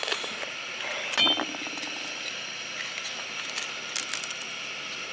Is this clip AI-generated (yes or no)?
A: no